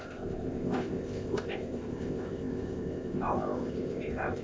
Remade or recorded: remade